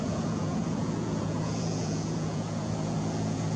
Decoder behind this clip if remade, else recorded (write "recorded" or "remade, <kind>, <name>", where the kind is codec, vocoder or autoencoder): remade, vocoder, Vocos